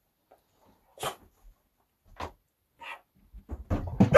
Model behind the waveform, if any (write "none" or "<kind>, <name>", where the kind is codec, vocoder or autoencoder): none